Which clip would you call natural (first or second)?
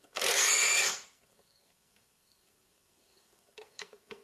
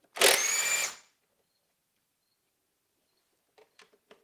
second